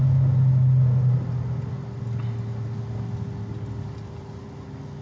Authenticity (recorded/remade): recorded